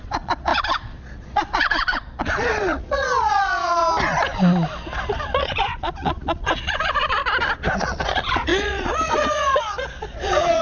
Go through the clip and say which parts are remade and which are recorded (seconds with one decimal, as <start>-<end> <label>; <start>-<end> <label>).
0.0-3.8 remade; 3.8-5.1 recorded; 5.1-7.2 remade; 7.2-7.8 recorded; 7.8-10.6 remade